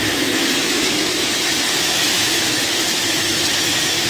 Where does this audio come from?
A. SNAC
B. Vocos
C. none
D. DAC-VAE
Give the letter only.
D